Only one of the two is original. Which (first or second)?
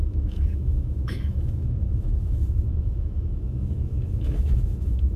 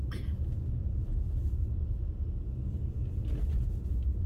second